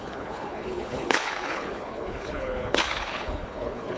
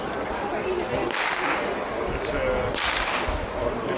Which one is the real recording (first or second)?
second